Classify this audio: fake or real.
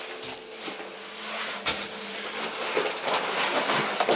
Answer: real